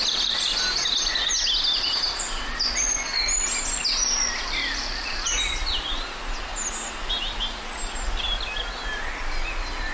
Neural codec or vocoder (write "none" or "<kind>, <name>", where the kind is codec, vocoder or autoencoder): none